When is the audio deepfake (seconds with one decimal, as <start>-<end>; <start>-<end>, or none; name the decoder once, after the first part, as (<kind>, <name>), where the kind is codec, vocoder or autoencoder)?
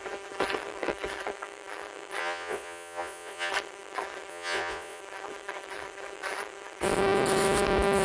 2.2-3.5 (vocoder, Vocos); 4.3-5.0